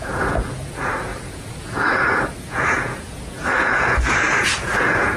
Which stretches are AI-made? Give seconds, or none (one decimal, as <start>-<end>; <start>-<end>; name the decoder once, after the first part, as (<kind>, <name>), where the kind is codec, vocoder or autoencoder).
0.0-5.2 (vocoder, Vocos)